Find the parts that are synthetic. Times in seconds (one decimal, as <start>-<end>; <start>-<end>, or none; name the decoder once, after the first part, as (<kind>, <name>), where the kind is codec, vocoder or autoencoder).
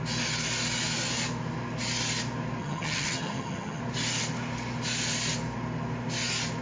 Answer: 2.6-3.8 (vocoder, HiFi-GAN)